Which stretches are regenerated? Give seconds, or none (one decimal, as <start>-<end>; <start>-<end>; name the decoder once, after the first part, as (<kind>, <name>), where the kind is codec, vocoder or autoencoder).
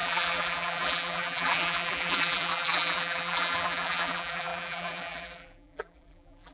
0.0-6.5 (vocoder, BigVGAN v2)